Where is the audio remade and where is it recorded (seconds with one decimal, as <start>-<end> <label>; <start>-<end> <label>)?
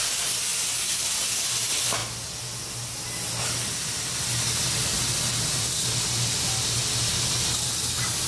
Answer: 0.0-8.3 recorded